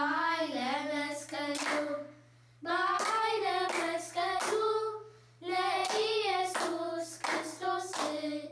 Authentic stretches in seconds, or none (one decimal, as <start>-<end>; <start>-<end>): 0.0-8.5